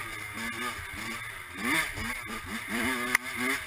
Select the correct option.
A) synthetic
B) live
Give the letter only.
B